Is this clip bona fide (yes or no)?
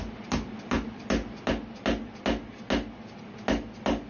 yes